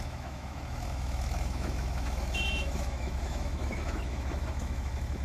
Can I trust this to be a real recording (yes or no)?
no